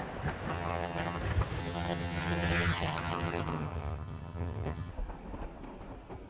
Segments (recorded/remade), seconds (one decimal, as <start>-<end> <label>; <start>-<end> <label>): 0.0-0.5 recorded; 0.5-1.2 remade; 1.2-1.6 recorded; 1.6-4.9 remade; 4.9-6.3 recorded